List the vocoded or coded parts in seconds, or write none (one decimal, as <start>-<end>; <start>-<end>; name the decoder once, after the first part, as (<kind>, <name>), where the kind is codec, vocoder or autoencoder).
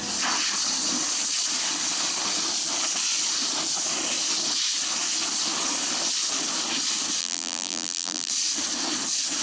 7.2-8.3 (vocoder, BigVGAN v2)